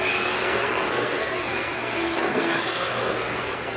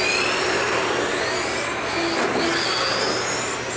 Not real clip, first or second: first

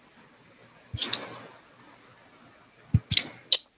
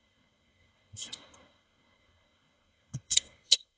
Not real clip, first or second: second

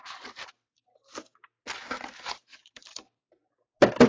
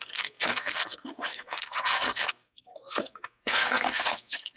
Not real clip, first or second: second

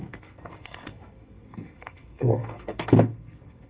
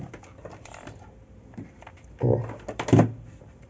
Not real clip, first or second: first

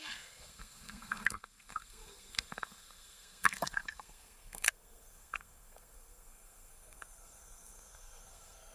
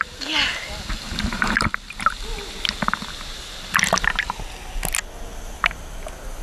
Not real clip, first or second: first